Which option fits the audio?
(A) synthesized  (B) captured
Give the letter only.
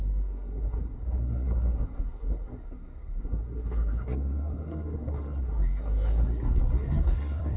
A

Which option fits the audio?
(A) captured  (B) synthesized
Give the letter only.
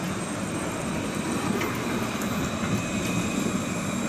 A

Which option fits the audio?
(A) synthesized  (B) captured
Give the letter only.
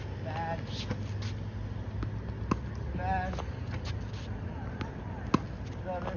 B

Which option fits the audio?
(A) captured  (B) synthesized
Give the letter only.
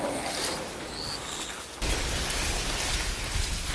A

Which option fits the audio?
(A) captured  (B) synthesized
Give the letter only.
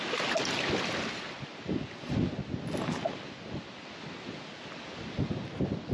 A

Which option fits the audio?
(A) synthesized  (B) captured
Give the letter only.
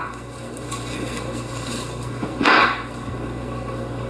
A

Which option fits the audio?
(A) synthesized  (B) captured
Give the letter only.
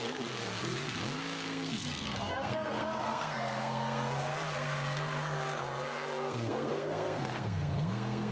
A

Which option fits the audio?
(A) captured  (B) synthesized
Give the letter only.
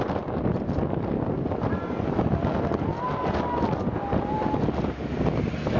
A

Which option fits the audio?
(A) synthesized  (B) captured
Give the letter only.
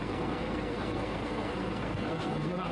A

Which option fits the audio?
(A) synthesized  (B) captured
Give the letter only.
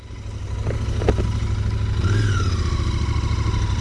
B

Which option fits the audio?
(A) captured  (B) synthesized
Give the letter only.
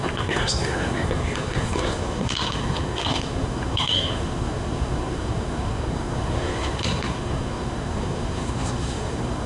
B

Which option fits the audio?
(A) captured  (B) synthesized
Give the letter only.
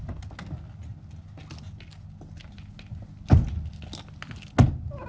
A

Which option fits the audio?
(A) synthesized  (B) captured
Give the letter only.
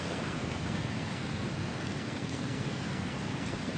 A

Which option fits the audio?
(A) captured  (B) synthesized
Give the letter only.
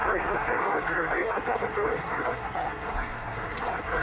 B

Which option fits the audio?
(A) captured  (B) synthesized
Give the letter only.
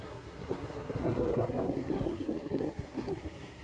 B